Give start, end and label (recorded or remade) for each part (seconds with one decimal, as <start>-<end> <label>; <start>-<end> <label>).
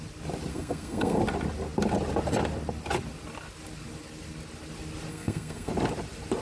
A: 0.0-0.5 recorded; 0.5-1.2 remade; 1.2-5.1 recorded; 5.1-5.7 remade; 5.7-6.4 recorded